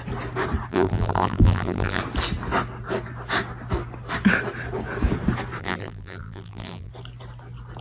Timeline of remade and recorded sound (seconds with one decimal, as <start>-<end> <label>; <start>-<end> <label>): 0.0-0.7 recorded; 0.7-2.0 remade; 2.0-5.6 recorded; 5.6-6.9 remade; 6.9-7.8 recorded